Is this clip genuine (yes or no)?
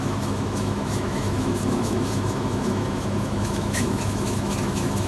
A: no